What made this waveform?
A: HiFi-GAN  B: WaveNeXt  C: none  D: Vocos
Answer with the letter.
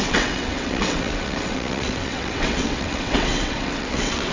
B